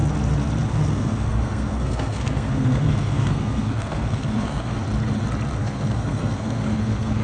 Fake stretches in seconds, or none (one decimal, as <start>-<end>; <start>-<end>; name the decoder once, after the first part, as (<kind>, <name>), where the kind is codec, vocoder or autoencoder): 0.7-4.7 (codec, SNAC); 5.6-7.2